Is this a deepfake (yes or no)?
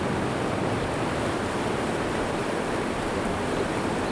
no